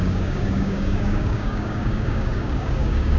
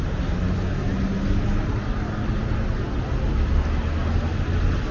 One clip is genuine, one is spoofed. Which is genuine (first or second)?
second